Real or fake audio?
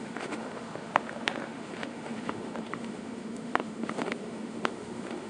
fake